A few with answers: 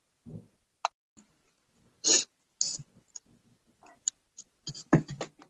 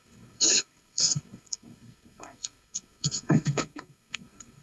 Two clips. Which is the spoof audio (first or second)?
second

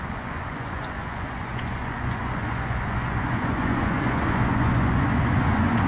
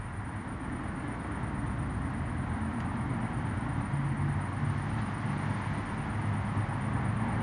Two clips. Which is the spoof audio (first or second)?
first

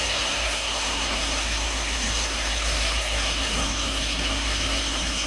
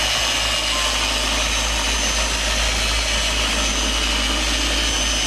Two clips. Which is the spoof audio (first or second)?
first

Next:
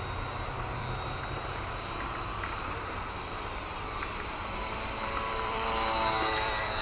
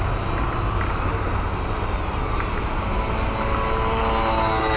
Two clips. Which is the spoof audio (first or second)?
first